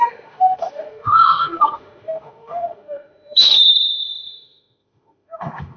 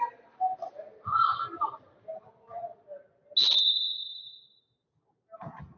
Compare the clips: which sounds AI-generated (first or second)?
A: first